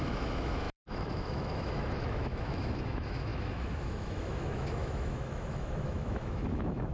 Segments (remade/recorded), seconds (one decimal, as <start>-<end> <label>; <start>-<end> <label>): 0.0-6.9 remade